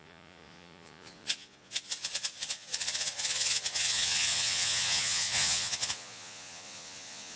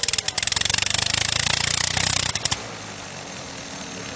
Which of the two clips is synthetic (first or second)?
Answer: first